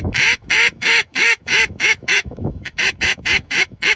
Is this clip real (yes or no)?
no